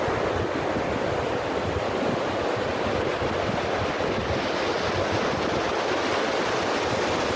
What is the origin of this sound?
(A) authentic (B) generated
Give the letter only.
A